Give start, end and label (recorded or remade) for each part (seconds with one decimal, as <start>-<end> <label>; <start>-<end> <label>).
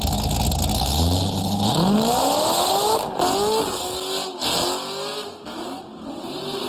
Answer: 0.0-6.7 recorded